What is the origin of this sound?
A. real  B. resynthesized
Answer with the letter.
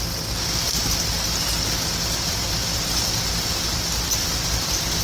A